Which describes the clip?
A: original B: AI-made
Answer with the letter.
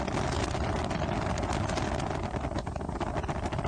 A